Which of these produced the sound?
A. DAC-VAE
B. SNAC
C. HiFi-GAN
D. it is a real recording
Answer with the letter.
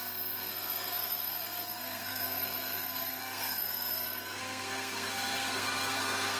B